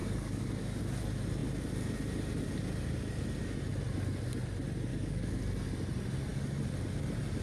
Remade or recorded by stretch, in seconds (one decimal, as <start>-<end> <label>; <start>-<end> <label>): 0.0-0.8 remade; 0.8-4.9 recorded; 4.9-5.4 remade; 5.4-7.4 recorded